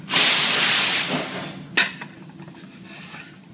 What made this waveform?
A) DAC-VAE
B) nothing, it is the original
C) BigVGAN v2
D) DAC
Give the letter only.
B